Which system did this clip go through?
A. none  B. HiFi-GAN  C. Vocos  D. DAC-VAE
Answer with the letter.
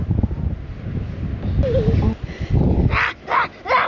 A